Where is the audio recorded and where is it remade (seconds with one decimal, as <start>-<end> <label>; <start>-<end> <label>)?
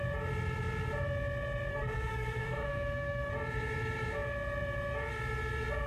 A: 0.0-1.7 recorded; 1.7-3.3 remade; 3.3-5.9 recorded